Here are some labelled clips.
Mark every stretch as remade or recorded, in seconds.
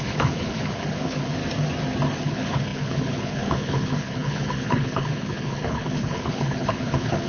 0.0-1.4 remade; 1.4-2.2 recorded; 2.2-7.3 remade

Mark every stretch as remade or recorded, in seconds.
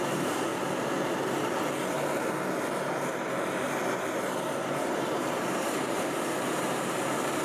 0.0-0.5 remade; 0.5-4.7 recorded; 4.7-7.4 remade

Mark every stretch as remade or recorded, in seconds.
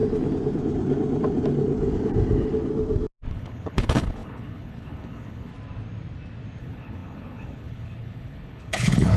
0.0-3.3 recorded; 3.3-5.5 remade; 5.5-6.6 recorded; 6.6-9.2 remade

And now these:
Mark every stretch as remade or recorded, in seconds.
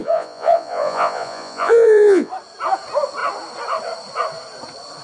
0.0-2.3 remade; 2.3-5.0 recorded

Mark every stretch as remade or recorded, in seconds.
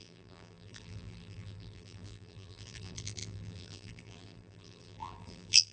0.0-5.7 remade